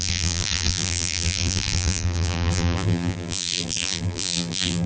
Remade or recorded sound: remade